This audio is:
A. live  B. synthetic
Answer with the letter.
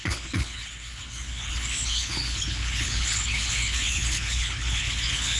B